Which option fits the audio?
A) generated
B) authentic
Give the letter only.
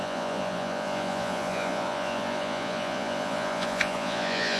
A